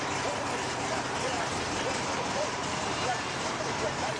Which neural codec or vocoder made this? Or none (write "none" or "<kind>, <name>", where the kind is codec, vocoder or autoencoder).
vocoder, BigVGAN v2